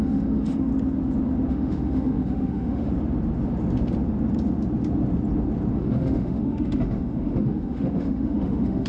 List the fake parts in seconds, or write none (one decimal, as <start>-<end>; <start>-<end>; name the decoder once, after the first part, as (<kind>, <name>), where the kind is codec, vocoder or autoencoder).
0.0-0.7 (autoencoder, DAC-VAE); 1.5-2.9; 5.7-8.9